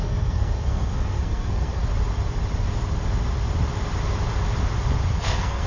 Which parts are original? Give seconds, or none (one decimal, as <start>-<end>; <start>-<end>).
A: 1.8-5.2